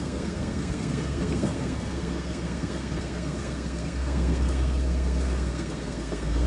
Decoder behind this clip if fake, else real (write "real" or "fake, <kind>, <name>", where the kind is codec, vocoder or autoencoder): fake, codec, SNAC